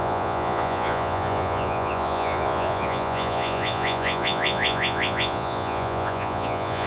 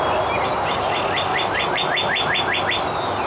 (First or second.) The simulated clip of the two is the first